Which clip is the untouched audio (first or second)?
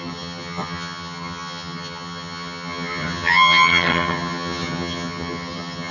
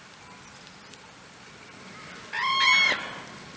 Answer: second